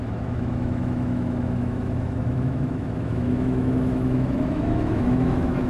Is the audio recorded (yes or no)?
no